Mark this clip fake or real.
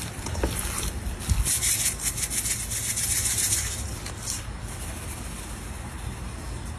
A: real